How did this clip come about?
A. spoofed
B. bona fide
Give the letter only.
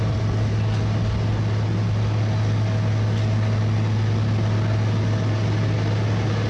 B